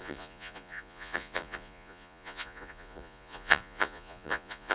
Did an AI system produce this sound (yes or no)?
yes